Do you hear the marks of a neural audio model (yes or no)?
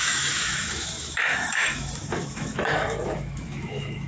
yes